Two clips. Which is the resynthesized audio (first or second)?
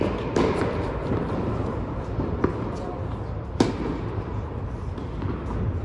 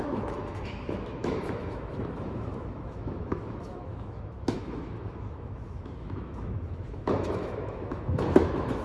second